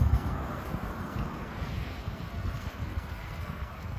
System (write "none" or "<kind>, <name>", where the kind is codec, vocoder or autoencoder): codec, SNAC